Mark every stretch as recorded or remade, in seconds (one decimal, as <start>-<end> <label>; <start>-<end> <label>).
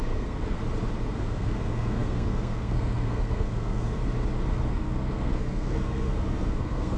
0.0-0.6 remade; 0.6-1.1 recorded; 1.1-4.0 remade; 4.0-4.7 recorded; 4.7-7.0 remade